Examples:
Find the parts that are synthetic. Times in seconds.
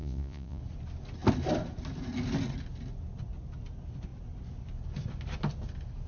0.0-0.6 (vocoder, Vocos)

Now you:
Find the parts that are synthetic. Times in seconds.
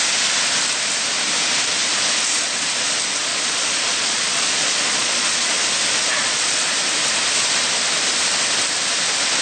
3.3-5.6 (vocoder, Vocos); 6.1-6.7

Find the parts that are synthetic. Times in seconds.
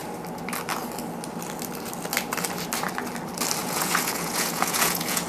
3.6-5.3 (vocoder, Vocos)